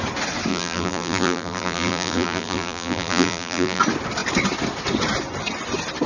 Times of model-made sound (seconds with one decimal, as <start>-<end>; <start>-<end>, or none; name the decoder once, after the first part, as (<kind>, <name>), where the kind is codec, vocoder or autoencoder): 0.5-3.8 (vocoder, BigVGAN v2)